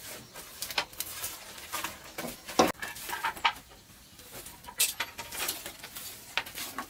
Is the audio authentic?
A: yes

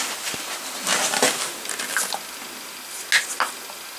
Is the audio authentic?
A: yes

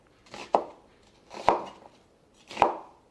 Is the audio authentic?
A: no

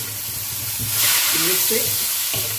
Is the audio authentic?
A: yes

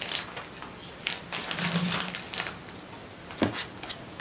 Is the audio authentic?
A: yes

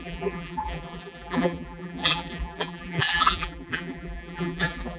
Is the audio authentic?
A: no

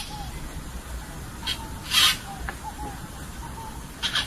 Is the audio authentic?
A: yes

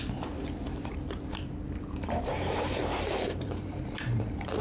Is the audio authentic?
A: no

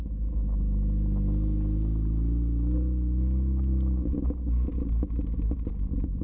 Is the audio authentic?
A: yes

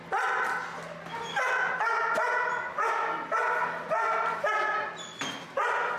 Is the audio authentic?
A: yes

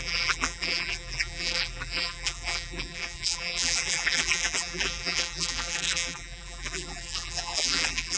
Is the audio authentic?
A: no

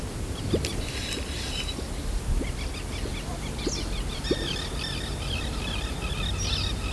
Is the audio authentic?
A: yes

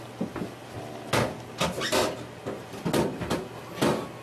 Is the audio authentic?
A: yes